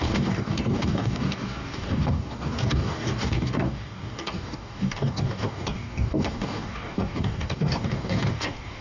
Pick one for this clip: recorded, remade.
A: remade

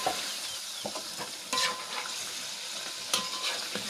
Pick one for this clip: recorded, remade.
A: recorded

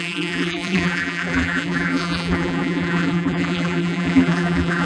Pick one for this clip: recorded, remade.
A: remade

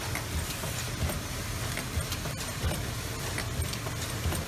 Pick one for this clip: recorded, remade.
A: recorded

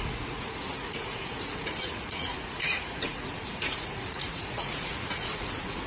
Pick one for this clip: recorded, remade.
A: remade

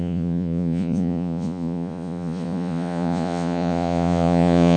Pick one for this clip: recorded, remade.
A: remade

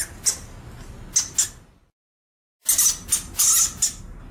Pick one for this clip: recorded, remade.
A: recorded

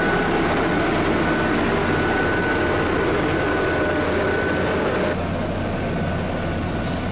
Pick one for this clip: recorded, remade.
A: recorded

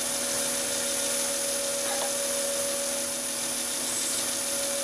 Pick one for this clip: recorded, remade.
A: recorded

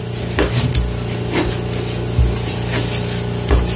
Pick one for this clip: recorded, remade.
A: recorded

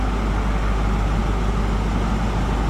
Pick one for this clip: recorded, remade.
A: recorded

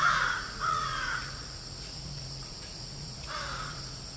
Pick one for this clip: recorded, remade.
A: remade